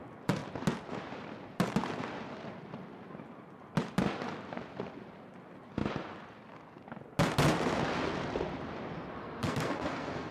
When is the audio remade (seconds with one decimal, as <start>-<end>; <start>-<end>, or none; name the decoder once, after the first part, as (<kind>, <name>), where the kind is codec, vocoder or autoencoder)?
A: 9.2-10.3 (codec, SNAC)

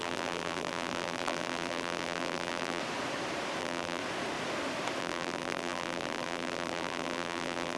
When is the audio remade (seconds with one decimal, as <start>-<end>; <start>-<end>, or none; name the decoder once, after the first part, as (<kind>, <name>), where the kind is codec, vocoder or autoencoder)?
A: 0.0-2.8 (vocoder, BigVGAN v2); 3.6-4.0; 5.0-7.8

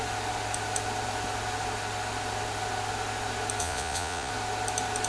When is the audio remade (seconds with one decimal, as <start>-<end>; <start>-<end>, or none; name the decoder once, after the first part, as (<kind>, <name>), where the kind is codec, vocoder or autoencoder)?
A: 3.6-4.3 (vocoder, Vocos)

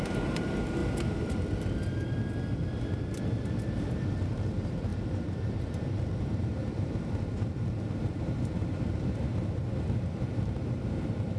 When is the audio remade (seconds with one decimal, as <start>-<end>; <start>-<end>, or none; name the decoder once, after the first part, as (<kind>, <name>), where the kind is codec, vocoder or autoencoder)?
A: 0.0-0.8 (vocoder, BigVGAN v2); 3.7-11.4

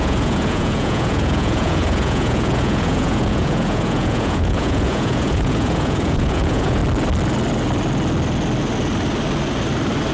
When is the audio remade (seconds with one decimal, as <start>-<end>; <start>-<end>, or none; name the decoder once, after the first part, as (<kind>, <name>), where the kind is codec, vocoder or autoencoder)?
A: 0.0-6.8 (vocoder, Vocos)

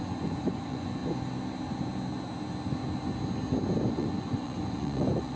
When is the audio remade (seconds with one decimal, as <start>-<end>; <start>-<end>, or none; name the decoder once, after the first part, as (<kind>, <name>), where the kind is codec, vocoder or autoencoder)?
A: 0.0-1.0 (vocoder, Vocos); 3.9-5.4